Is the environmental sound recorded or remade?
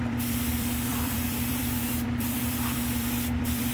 remade